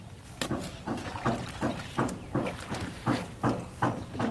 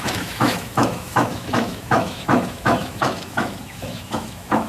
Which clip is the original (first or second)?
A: first